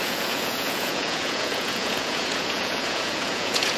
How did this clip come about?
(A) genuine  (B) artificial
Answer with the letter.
B